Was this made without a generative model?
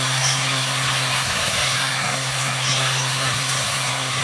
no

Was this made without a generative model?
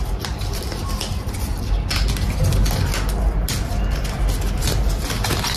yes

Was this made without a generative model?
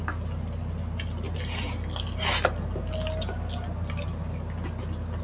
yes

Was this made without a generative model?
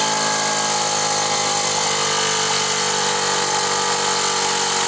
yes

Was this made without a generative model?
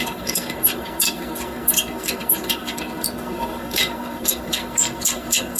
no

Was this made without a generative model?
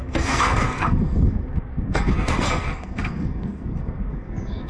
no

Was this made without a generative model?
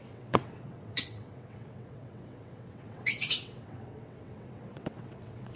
no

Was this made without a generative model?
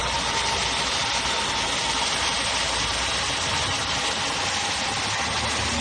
yes